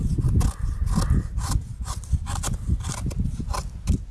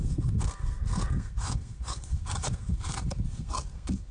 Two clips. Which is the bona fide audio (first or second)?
first